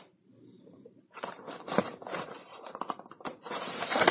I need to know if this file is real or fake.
fake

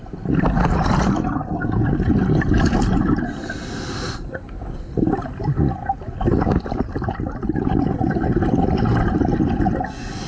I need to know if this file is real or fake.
real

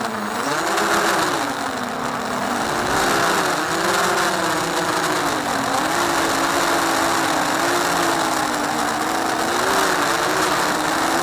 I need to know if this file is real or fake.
real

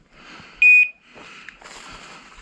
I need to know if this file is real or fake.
real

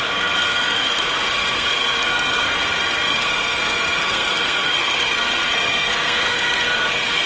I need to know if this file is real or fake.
fake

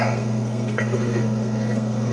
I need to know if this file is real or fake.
fake